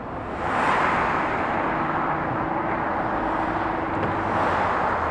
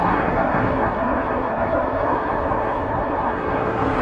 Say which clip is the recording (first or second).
first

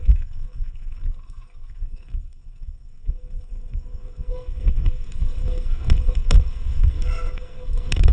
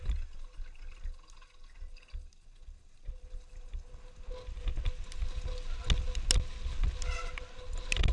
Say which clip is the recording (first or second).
second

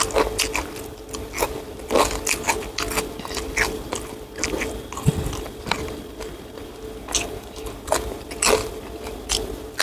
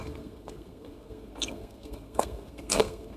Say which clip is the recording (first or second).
first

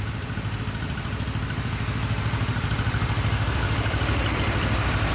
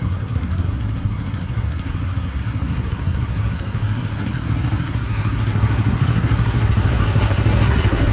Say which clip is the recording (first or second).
first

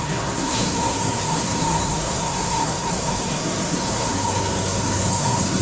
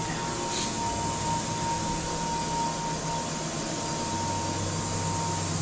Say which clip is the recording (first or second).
second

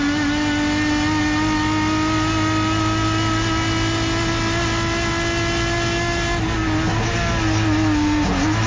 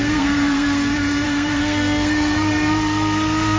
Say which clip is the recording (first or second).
first